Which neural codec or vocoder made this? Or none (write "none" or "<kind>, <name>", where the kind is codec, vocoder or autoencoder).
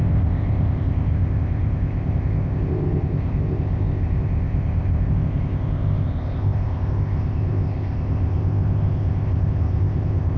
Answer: codec, ZipCodec